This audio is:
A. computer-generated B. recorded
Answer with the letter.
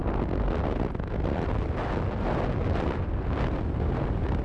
B